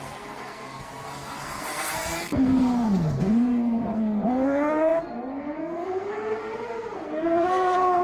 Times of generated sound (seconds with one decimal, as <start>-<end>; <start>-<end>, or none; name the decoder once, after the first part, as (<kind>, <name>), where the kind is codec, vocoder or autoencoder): 0.0-8.0 (codec, SNAC)